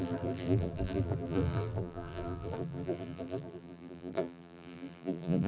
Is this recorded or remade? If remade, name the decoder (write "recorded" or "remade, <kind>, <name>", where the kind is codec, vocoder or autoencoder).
remade, vocoder, BigVGAN v2